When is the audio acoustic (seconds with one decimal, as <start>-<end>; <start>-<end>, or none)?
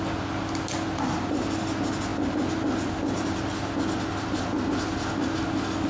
0.0-5.9